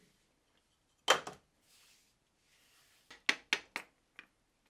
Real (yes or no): yes